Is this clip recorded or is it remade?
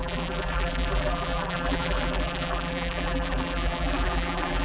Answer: remade